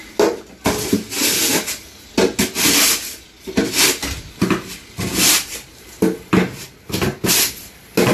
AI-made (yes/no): no